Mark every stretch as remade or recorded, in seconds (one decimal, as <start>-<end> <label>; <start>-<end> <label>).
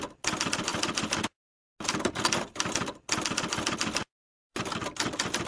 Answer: 0.0-5.5 recorded